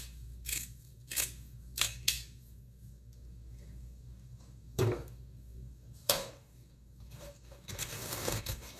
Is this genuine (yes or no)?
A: no